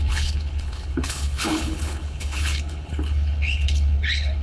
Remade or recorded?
remade